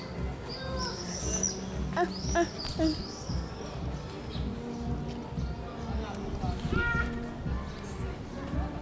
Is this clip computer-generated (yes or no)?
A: no